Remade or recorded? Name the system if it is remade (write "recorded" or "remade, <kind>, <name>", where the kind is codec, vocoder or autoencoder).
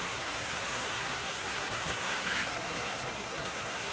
remade, codec, SNAC